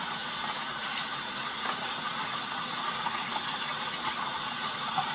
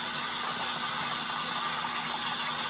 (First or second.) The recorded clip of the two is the second